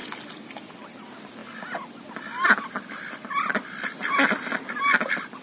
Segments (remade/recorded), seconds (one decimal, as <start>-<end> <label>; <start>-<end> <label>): 0.0-5.4 recorded